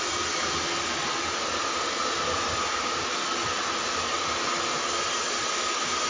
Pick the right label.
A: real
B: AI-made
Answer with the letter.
A